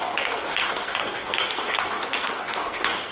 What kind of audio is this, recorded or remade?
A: remade